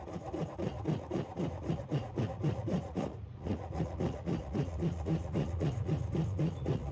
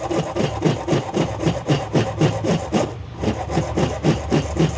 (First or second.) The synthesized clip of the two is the first